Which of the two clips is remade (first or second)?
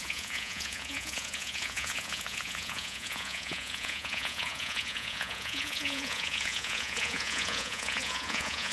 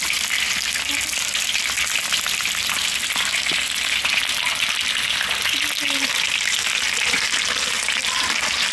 first